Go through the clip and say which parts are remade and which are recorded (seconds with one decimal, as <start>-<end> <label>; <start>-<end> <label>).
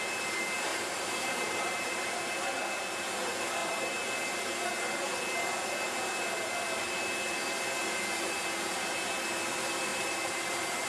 0.0-0.7 recorded; 0.7-2.2 remade; 2.2-9.9 recorded; 9.9-10.9 remade